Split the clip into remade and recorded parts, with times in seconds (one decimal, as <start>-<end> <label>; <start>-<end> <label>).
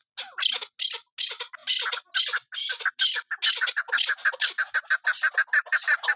0.0-6.2 recorded